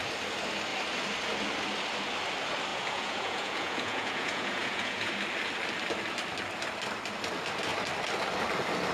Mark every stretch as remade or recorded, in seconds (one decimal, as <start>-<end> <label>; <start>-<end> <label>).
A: 0.0-2.7 recorded; 2.7-5.1 remade; 5.1-8.9 recorded